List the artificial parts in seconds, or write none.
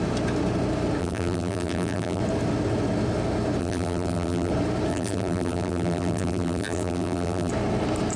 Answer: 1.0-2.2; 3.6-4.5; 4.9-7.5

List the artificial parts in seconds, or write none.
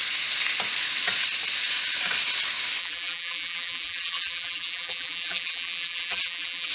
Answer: 2.8-6.7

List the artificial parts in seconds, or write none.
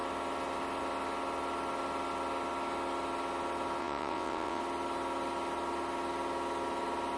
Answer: 3.8-4.6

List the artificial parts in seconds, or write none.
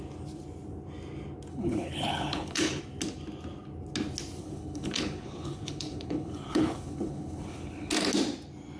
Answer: 1.5-2.8; 4.4-7.9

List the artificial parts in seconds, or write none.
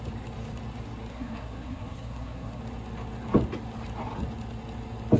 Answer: 1.1-2.6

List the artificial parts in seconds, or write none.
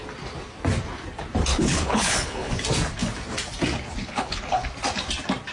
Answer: 1.5-2.5; 4.0-4.6